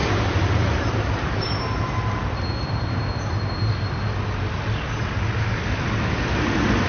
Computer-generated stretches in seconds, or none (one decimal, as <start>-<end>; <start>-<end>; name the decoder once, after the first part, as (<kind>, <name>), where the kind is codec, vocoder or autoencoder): 0.0-2.2 (vocoder, BigVGAN v2)